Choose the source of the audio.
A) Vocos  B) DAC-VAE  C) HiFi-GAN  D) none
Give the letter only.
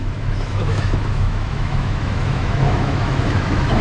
B